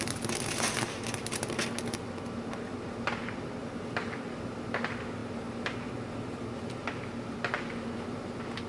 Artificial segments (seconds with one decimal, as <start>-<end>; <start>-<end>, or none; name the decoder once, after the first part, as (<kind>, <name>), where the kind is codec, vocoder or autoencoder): none